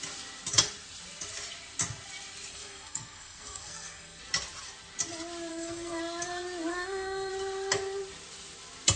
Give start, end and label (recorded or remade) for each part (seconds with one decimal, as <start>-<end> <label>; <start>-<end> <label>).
0.0-2.5 recorded; 2.5-4.2 remade; 4.2-5.5 recorded; 5.5-6.0 remade; 6.0-6.7 recorded; 6.7-7.3 remade; 7.3-9.0 recorded